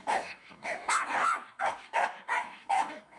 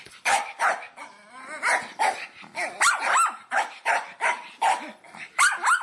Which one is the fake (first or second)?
first